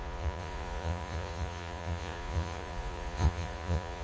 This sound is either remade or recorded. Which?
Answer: remade